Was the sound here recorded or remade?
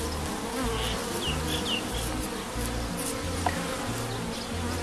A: recorded